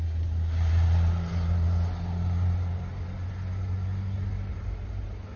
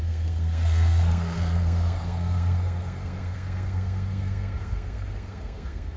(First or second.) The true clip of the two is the first